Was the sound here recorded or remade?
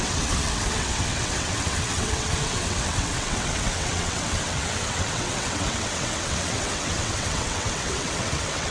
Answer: remade